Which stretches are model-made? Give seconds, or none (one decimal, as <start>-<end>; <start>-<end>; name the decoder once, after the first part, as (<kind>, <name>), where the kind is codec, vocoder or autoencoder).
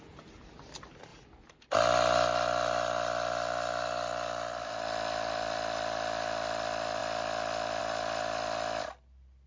none